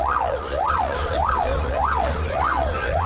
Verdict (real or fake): fake